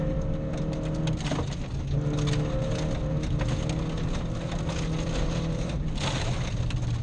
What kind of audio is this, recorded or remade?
recorded